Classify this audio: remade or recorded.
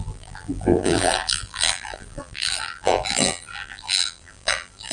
remade